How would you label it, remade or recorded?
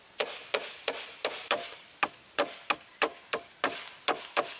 recorded